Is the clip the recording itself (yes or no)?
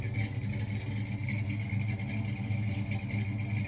yes